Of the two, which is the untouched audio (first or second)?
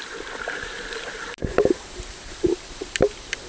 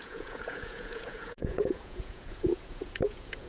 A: first